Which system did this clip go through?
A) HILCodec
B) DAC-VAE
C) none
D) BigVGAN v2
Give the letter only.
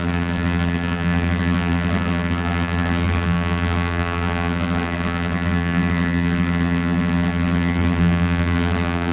D